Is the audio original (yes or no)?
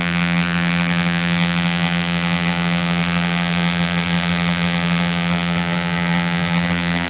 no